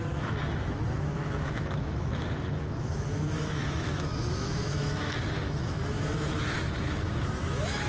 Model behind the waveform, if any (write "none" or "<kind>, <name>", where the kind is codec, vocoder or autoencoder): autoencoder, DAC-VAE